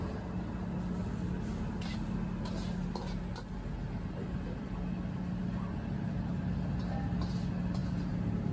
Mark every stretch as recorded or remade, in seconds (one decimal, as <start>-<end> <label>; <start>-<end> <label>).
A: 0.0-8.5 recorded